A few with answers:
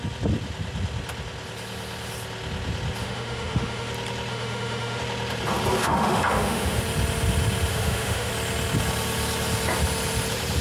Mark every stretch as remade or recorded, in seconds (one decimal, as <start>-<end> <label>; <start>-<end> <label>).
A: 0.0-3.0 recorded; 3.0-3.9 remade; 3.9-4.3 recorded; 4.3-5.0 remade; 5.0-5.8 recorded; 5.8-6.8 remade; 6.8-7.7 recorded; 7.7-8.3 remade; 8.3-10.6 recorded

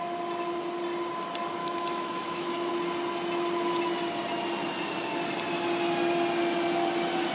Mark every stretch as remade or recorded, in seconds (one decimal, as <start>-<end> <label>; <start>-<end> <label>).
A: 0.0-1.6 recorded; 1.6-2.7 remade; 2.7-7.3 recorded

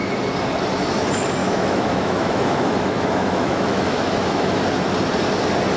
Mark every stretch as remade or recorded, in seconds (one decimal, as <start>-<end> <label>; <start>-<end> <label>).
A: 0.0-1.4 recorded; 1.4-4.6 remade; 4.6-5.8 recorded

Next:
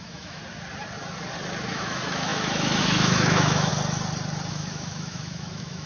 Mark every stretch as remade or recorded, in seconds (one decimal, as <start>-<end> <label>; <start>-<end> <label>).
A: 0.0-0.4 remade; 0.4-1.7 recorded; 1.7-3.7 remade; 3.7-4.5 recorded; 4.5-5.9 remade

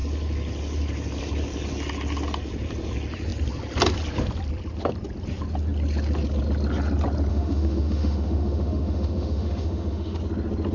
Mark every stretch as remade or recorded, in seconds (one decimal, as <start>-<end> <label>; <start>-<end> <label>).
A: 0.0-7.3 recorded; 7.3-10.2 remade; 10.2-10.7 recorded

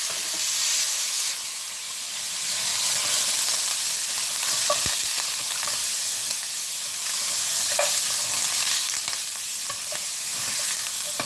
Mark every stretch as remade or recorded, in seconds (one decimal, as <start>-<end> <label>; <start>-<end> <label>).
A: 0.0-0.9 recorded; 0.9-1.6 remade; 1.6-5.9 recorded; 5.9-7.6 remade; 7.6-11.3 recorded

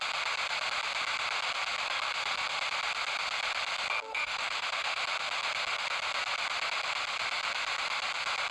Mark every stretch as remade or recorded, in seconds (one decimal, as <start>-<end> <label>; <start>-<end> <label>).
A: 0.0-4.1 recorded; 4.1-5.0 remade; 5.0-8.5 recorded